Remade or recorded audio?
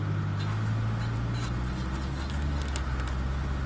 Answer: recorded